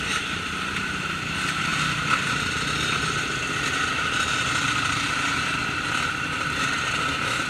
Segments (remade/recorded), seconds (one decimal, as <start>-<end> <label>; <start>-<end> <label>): 0.0-7.5 recorded